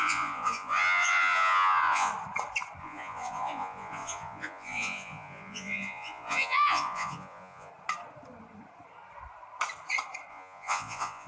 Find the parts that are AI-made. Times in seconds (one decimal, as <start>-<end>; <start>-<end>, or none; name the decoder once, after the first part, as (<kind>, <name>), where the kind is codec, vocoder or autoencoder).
0.0-2.1 (vocoder, Vocos); 2.8-7.7; 10.3-11.3